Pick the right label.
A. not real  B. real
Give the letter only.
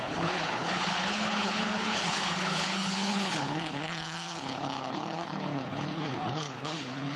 A